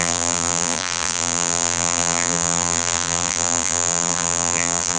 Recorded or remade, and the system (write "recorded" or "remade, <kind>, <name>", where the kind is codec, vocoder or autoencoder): remade, vocoder, BigVGAN v2